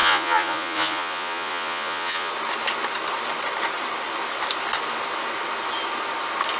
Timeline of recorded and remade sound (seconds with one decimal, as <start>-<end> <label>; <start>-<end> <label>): 0.0-2.3 remade; 2.3-6.6 recorded